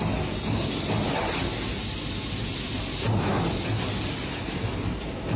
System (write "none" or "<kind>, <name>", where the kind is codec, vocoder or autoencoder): none